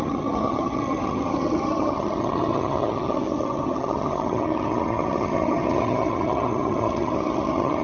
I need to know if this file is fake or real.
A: fake